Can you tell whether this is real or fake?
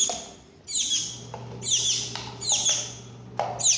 real